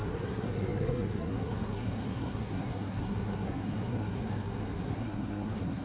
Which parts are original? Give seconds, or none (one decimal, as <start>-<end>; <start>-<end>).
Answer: none